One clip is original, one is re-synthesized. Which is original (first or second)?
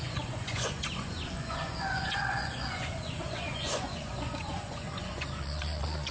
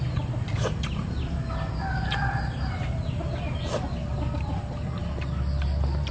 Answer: second